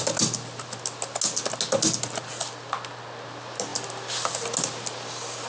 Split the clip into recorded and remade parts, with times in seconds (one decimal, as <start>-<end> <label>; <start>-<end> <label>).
0.0-5.5 recorded